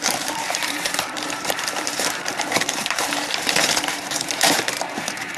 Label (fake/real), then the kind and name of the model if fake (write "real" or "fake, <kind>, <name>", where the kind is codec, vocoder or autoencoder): fake, vocoder, BigVGAN v2